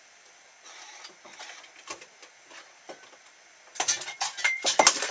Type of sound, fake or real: real